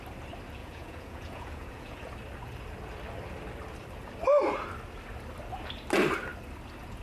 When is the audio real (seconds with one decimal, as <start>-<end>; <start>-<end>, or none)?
0.0-0.6; 2.1-7.0